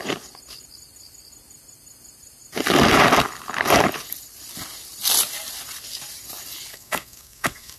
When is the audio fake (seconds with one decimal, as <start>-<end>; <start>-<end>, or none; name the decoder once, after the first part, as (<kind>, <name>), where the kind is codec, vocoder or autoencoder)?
6.7-7.8 (codec, SNAC)